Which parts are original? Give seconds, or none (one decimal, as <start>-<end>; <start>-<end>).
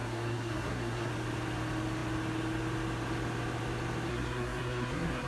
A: 1.1-4.1